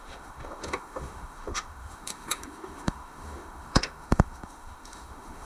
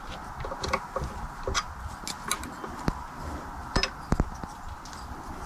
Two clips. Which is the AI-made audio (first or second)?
first